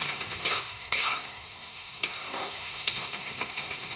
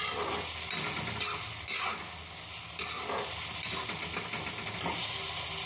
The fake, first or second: first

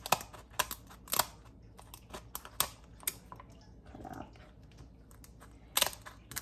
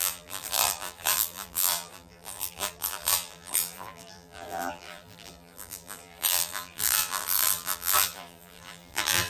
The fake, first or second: second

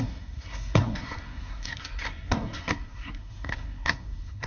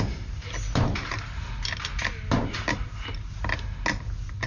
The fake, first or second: first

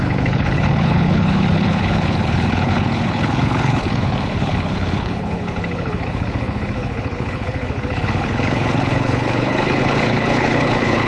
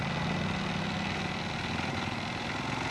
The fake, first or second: first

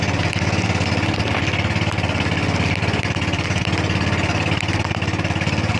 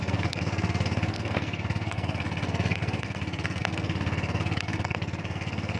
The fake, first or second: second